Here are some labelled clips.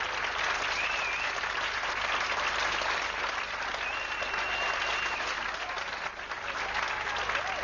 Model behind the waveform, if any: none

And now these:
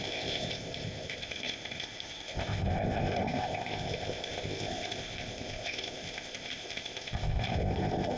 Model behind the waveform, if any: codec, ZipCodec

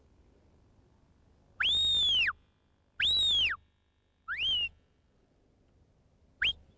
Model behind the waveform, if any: none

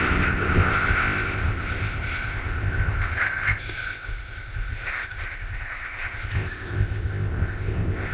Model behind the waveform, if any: codec, ZipCodec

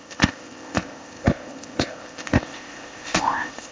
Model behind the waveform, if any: codec, ZipCodec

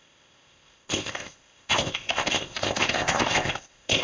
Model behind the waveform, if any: codec, ZipCodec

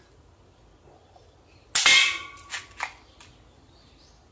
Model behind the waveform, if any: none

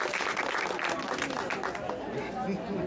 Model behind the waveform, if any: none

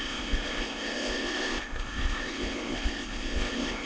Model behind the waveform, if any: codec, ZipCodec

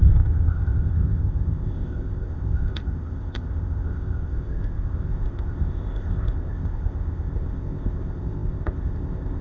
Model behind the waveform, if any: codec, ZipCodec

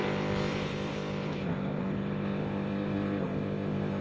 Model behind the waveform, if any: codec, ZipCodec